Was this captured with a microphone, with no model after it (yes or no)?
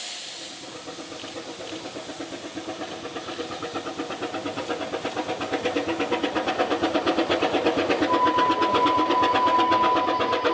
yes